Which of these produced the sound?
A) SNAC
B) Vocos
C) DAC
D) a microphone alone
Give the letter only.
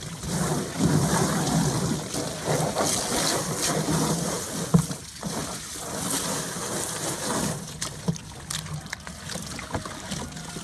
D